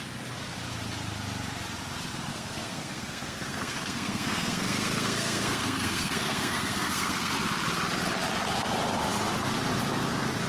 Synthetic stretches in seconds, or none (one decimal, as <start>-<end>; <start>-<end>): 2.3-7.3